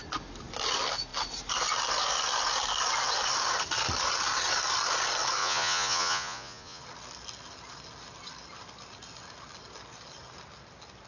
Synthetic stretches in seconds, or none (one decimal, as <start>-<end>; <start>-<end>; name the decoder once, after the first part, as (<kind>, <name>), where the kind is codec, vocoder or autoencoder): 5.4-6.8 (vocoder, Vocos)